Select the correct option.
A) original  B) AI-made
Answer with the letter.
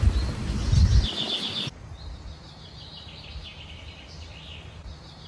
A